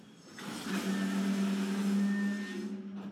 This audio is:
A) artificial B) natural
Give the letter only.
B